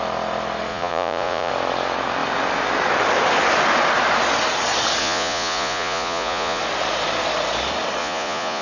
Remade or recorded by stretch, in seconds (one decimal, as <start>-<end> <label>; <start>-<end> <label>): 0.0-0.7 recorded; 0.7-1.5 remade; 1.5-5.0 recorded; 5.0-6.6 remade; 6.6-8.0 recorded; 8.0-8.6 remade